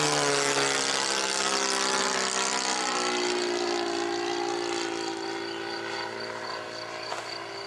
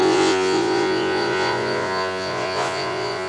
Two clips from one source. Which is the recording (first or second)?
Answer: first